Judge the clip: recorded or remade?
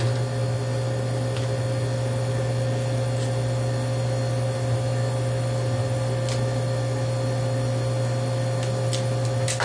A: recorded